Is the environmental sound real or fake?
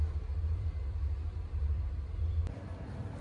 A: fake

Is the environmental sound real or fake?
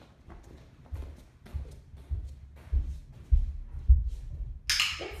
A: real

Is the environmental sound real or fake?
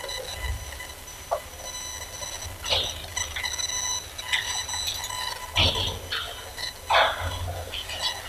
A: real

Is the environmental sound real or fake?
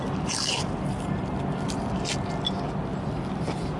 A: real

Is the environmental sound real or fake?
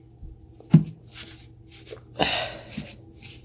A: real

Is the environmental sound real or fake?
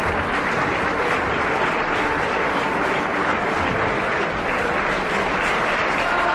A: real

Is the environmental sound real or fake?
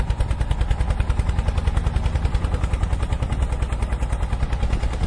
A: real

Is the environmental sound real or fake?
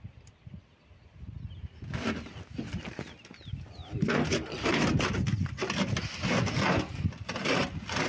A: real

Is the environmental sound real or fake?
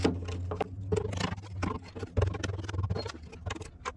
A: real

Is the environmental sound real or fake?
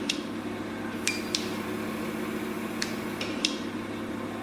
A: real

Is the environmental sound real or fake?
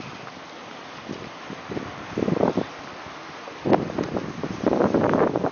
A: real